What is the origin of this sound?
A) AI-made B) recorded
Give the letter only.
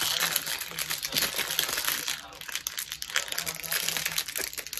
B